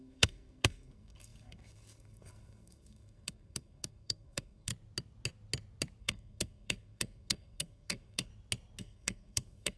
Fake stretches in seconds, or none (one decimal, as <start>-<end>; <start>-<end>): 0.0-4.7; 6.0-8.3; 8.8-9.8